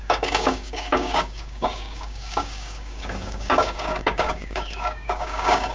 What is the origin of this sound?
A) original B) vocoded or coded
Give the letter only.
B